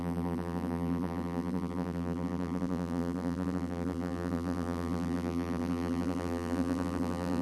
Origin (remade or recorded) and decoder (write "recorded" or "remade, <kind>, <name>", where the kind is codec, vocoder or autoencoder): remade, vocoder, BigVGAN v2